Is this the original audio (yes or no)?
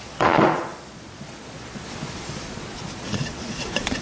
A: no